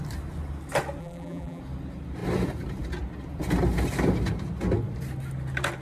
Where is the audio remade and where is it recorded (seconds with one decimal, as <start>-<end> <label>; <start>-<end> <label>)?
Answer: 0.0-1.0 recorded; 1.0-1.6 remade; 1.6-5.8 recorded